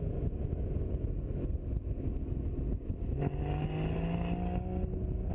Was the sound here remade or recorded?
recorded